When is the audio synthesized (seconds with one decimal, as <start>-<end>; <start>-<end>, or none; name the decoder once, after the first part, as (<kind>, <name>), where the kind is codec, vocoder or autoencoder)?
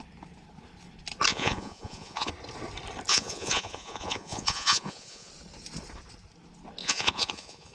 1.3-2.3 (vocoder, Vocos); 3.1-5.3; 6.8-7.7